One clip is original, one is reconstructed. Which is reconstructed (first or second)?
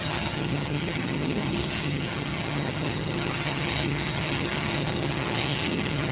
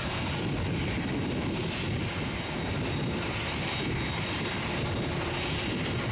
first